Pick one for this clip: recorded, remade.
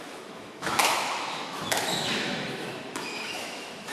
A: remade